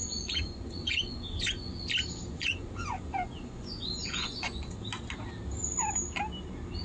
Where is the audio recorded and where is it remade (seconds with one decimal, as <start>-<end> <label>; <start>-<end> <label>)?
0.0-1.9 remade; 1.9-2.3 recorded; 2.3-4.7 remade; 4.7-6.8 recorded